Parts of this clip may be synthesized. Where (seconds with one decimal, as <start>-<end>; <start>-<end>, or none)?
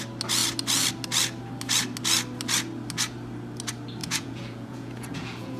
4.0-5.6